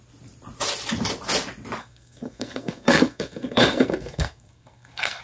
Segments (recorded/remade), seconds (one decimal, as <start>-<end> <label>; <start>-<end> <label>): 0.0-1.8 recorded; 1.8-5.2 remade